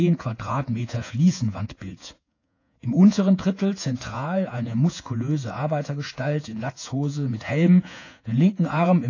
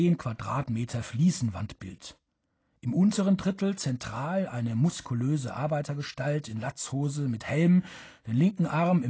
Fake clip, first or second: first